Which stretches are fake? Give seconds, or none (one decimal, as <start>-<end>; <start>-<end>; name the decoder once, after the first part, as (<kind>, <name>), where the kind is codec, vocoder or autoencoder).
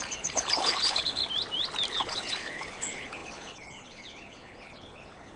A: 0.0-1.2 (codec, HILCodec); 1.9-5.4